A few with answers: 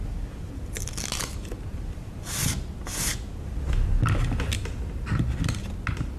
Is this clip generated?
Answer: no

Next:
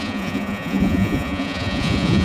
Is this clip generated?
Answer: yes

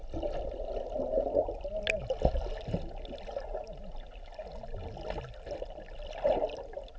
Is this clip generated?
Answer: no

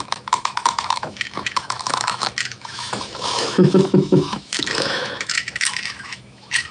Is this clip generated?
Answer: yes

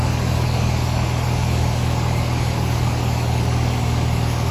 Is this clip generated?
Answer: yes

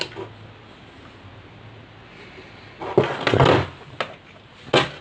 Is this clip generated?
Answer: no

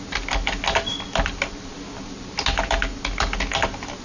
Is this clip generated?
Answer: no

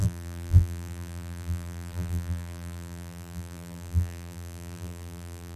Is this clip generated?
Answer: yes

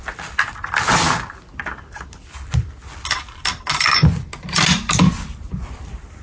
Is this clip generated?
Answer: no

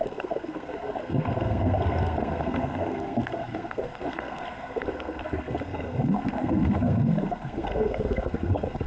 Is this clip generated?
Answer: yes